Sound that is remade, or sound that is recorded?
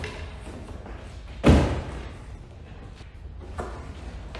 recorded